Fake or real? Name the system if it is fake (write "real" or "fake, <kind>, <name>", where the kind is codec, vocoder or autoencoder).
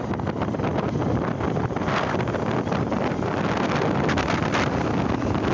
real